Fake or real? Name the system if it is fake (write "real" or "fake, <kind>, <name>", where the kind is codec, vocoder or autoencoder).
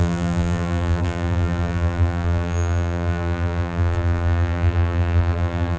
fake, vocoder, BigVGAN v2